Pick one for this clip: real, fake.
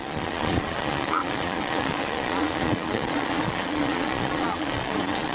fake